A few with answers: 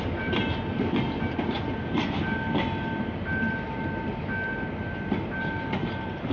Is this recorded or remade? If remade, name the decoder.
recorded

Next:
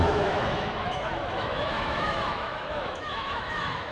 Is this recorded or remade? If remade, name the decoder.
remade, autoencoder, DAC-VAE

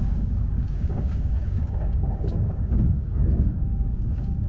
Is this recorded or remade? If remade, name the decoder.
remade, codec, DAC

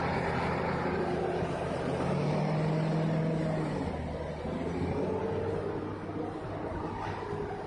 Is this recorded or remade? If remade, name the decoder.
recorded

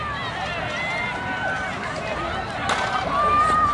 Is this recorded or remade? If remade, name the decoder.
recorded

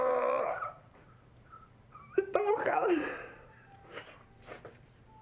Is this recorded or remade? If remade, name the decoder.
remade, vocoder, BigVGAN v2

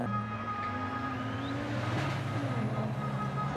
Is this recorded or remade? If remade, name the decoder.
recorded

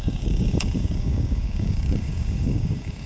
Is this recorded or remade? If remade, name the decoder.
remade, codec, DAC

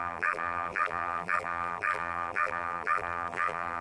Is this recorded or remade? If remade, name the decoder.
remade, vocoder, BigVGAN v2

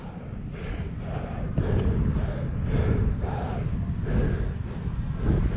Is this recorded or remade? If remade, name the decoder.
recorded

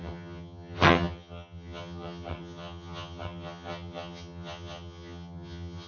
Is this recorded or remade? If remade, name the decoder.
remade, vocoder, HiFi-GAN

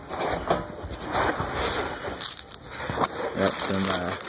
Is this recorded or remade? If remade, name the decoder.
recorded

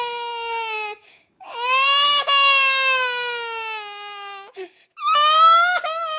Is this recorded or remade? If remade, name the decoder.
remade, codec, DAC